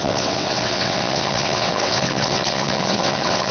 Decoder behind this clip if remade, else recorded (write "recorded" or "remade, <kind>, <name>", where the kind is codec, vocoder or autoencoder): remade, vocoder, WaveNeXt